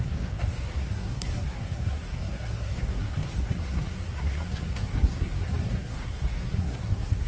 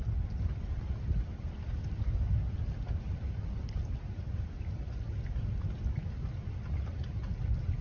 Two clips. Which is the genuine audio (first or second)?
second